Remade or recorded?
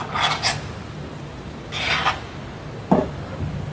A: recorded